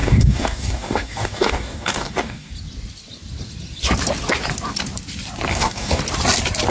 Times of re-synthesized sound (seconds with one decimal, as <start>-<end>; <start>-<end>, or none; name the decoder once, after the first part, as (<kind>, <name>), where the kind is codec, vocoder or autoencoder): 0.0-2.5 (codec, DAC); 5.5-6.0